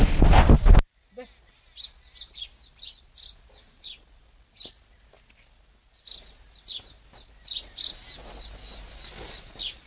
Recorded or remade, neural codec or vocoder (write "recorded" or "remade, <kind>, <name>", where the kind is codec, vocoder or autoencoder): recorded